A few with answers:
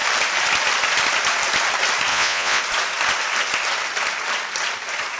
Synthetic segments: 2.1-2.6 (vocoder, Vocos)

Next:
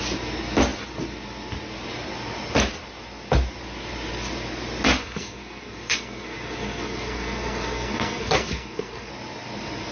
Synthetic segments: 5.0-9.1 (codec, SNAC)

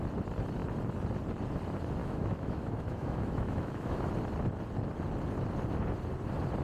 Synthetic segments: 2.0-4.1 (autoencoder, DAC-VAE)

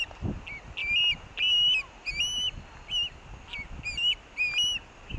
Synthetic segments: none

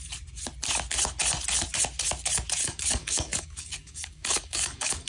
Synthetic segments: 2.6-5.1 (codec, DAC)